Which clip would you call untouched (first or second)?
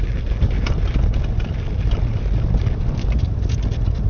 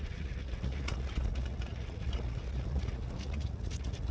first